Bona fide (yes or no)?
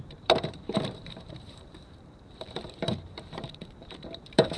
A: no